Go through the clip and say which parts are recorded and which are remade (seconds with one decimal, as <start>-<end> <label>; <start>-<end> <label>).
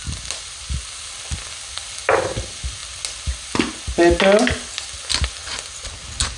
0.0-6.4 recorded